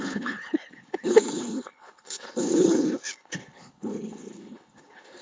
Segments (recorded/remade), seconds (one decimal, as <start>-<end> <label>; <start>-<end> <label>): 0.0-5.2 remade